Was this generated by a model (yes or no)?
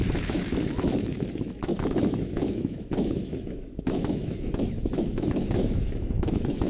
yes